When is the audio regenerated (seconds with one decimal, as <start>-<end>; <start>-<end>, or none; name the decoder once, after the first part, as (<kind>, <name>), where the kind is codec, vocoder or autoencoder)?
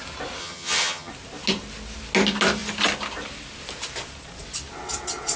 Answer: 0.4-1.1 (vocoder, HiFi-GAN)